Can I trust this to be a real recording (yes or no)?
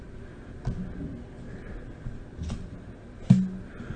yes